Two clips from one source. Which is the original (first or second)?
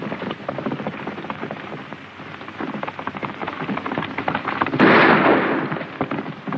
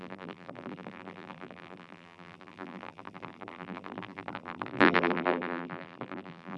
first